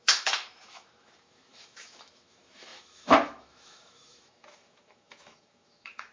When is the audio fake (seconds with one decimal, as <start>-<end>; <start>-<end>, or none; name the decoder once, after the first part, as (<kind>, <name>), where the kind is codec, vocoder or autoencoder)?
0.0-6.1 (autoencoder, DAC-VAE)